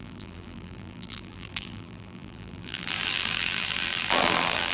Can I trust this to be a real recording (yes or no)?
no